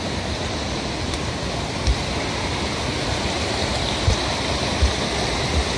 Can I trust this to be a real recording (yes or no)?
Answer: yes